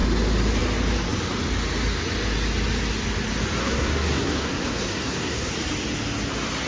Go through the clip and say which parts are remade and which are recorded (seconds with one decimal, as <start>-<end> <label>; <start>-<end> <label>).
0.0-3.6 recorded; 3.6-5.5 remade; 5.5-6.7 recorded